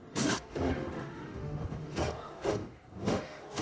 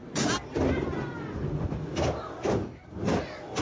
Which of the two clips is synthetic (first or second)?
first